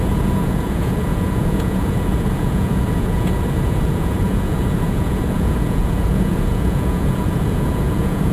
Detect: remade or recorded remade